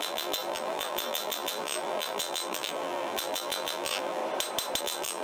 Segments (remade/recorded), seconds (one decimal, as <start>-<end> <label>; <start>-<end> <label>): 0.0-4.2 remade; 4.2-4.8 recorded; 4.8-5.2 remade